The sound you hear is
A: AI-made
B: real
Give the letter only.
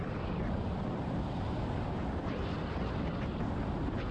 A